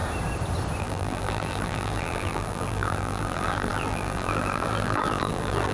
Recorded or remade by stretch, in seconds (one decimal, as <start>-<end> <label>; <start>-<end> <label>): 0.0-0.8 recorded; 0.8-5.7 remade